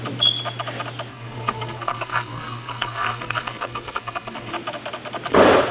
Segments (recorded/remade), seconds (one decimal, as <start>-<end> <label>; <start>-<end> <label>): 0.0-1.1 recorded; 1.1-4.5 remade; 4.5-5.7 recorded